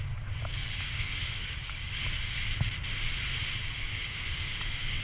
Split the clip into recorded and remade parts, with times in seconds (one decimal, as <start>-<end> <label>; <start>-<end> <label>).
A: 0.0-0.6 recorded; 0.6-1.9 remade; 1.9-3.9 recorded; 3.9-5.0 remade